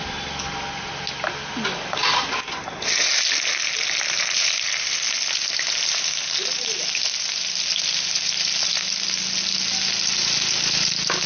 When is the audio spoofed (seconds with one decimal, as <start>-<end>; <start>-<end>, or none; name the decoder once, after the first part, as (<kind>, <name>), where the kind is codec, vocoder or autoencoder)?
none